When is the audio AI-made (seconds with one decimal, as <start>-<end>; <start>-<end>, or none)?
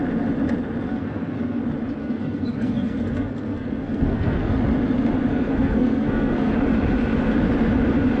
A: 0.9-1.6; 2.0-4.5; 5.3-6.5